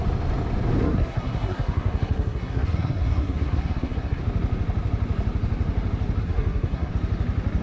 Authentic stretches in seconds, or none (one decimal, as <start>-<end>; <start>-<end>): 0.0-0.8; 4.2-6.2; 6.9-7.6